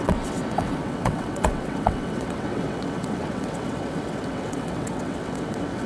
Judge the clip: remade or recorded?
remade